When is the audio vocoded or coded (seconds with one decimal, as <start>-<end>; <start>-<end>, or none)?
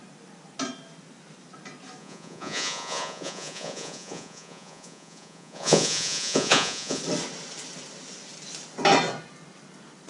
2.0-7.0